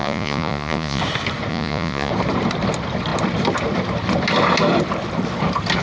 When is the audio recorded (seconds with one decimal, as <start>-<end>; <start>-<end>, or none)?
1.0-1.5; 2.1-5.8